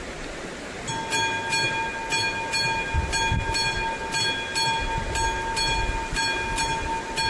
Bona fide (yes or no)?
yes